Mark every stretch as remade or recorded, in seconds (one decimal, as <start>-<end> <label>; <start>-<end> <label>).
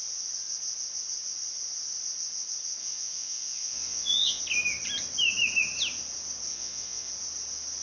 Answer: 0.0-2.8 recorded; 2.8-4.4 remade; 4.4-6.5 recorded; 6.5-7.1 remade; 7.1-7.8 recorded